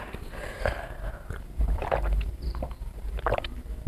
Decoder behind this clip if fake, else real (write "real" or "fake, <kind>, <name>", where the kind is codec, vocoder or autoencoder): fake, vocoder, BigVGAN v2